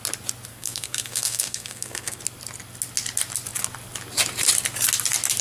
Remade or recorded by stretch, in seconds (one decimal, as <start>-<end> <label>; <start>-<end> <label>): 0.0-0.5 recorded; 0.5-2.2 remade; 2.2-5.4 recorded